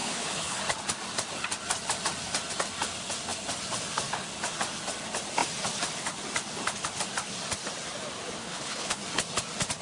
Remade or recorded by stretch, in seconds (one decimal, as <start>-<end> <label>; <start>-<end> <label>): 0.0-0.6 remade; 0.6-8.4 recorded; 8.4-9.0 remade; 9.0-9.8 recorded